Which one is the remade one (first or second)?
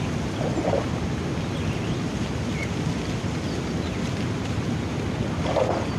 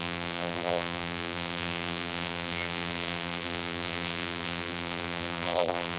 second